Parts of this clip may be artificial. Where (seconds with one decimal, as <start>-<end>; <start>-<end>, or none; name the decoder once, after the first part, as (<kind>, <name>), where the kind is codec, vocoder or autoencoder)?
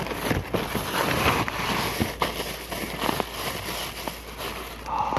none